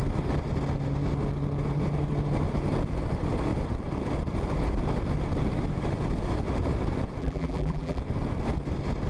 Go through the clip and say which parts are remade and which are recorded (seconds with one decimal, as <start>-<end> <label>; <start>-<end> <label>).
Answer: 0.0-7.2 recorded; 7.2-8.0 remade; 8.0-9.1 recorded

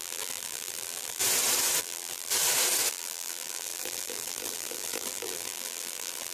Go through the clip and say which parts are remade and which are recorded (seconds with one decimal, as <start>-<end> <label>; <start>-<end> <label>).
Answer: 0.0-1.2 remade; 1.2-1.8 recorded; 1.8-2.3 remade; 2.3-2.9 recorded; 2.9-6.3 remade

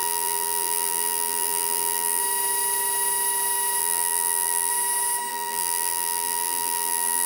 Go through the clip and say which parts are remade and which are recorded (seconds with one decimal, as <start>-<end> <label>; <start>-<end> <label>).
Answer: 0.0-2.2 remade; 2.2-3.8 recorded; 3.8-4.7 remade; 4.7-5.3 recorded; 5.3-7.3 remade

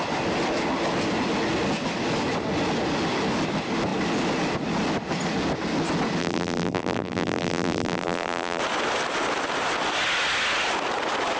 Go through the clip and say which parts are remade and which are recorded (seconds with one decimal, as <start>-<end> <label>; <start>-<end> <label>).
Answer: 0.0-6.2 recorded; 6.2-8.6 remade; 8.6-11.4 recorded

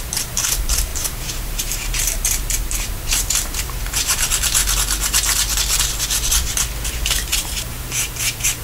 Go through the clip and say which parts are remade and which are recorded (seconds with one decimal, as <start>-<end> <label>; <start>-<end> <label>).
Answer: 0.0-4.6 remade; 4.6-6.9 recorded; 6.9-8.6 remade

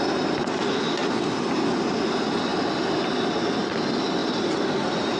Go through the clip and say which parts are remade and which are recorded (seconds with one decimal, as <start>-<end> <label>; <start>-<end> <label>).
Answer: 0.0-5.2 recorded

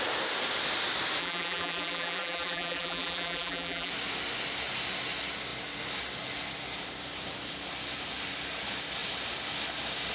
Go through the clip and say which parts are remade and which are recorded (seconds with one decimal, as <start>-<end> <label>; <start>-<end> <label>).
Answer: 0.0-1.2 recorded; 1.2-3.9 remade; 3.9-10.1 recorded

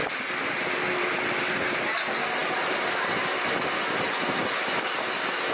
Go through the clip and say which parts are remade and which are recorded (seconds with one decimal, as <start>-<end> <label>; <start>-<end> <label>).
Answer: 0.0-1.6 remade; 1.6-5.5 recorded